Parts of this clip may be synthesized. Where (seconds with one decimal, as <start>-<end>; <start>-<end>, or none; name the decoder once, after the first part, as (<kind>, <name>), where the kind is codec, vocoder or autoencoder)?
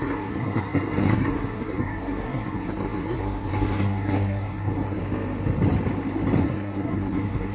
0.0-5.0 (codec, SNAC); 6.4-7.5